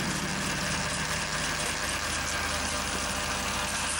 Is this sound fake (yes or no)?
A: no